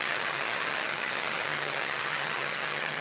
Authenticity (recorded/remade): remade